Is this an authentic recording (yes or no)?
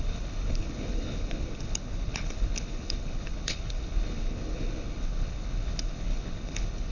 no